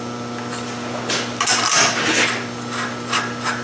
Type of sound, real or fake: real